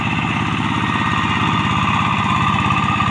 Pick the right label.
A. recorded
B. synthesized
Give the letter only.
A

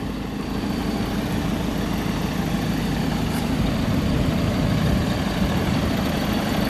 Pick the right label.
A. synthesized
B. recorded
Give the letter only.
B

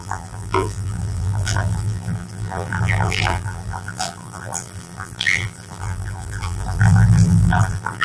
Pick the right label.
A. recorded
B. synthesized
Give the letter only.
B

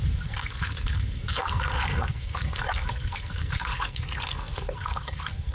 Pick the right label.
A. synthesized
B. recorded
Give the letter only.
A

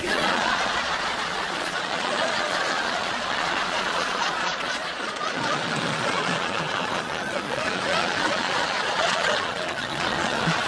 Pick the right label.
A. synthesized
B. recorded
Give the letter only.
A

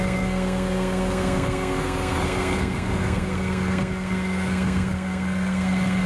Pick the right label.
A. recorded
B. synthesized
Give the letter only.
B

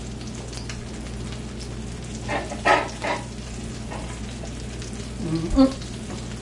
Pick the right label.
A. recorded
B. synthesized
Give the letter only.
A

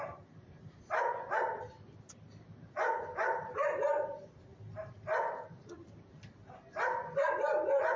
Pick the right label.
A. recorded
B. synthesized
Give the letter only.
A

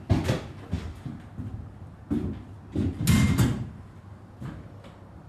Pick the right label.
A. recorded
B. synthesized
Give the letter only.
A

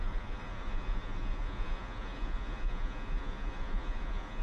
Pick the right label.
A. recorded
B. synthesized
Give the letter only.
B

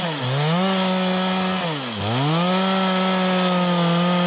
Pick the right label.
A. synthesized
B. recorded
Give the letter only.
B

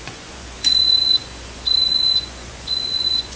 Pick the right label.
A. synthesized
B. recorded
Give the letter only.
A